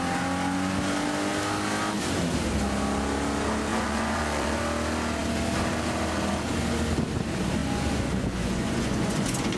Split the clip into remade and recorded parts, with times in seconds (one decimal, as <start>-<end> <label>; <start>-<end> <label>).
0.0-3.7 recorded; 3.7-4.6 remade; 4.6-7.6 recorded; 7.6-9.6 remade